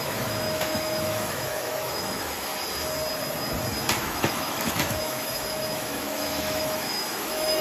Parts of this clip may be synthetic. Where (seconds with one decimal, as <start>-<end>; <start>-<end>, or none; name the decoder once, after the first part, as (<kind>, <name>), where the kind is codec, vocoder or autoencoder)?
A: 0.0-2.5 (autoencoder, DAC-VAE); 4.0-7.6